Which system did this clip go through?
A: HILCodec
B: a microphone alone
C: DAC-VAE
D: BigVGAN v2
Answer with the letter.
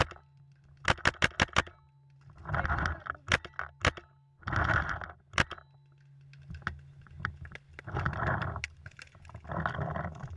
B